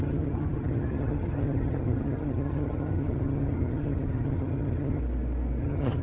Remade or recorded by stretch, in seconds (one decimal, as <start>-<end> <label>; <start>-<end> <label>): 0.0-5.0 remade; 5.0-5.6 recorded; 5.6-6.0 remade